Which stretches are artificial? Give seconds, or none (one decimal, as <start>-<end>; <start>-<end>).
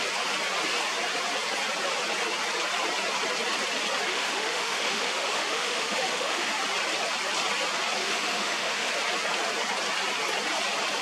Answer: 4.1-6.6; 8.0-8.9